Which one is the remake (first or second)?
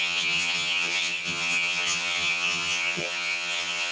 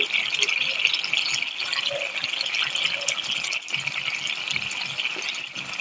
first